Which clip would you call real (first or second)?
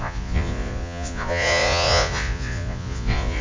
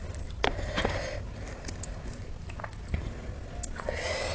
second